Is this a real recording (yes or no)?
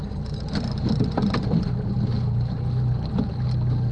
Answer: yes